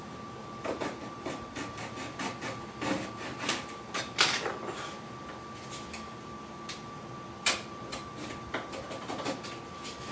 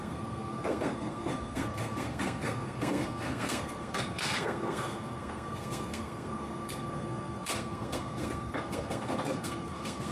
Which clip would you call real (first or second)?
first